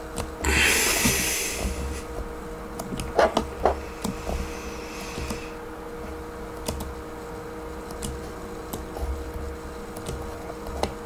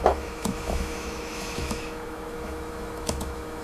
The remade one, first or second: second